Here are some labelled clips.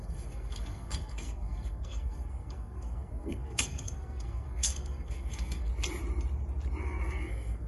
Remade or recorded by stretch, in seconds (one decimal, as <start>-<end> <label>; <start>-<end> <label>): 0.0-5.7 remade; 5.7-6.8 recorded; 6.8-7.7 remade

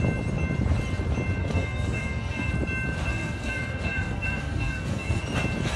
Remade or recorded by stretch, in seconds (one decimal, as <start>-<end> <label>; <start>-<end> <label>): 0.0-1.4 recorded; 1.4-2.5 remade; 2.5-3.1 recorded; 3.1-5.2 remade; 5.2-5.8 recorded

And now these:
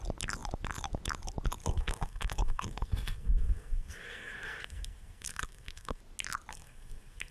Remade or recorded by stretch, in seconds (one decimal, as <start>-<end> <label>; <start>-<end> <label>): 0.0-1.6 recorded; 1.6-6.0 remade; 6.0-6.5 recorded; 6.5-7.3 remade